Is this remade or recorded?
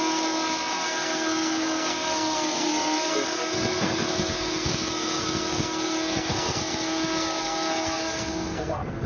remade